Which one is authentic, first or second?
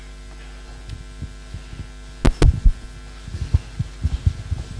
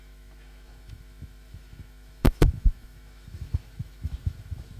first